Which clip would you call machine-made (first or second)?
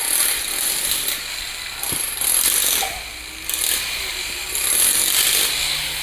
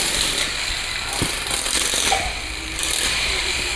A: second